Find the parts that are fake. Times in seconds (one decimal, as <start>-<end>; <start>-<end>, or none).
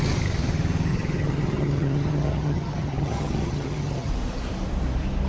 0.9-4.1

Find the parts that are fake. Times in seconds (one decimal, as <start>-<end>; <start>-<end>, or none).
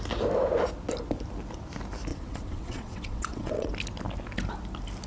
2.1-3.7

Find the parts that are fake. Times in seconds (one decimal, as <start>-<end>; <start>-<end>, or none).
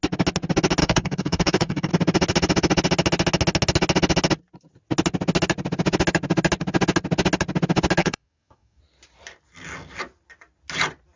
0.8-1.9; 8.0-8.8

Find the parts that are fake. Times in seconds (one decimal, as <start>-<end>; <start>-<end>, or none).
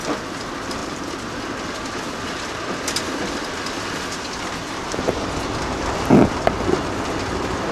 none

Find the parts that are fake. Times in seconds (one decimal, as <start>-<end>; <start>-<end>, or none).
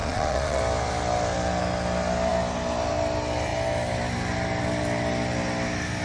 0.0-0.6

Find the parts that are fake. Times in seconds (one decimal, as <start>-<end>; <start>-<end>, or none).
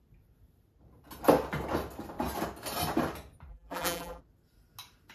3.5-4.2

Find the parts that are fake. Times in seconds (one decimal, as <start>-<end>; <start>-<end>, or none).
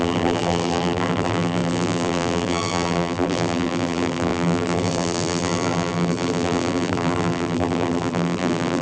0.0-8.8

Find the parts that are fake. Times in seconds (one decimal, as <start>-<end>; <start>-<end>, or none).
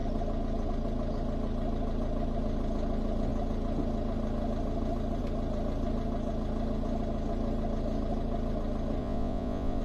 9.0-9.8